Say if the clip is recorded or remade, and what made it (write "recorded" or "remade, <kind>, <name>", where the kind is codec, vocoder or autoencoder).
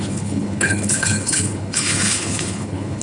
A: remade, codec, HILCodec